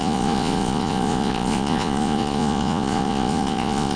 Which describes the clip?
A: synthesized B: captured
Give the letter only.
A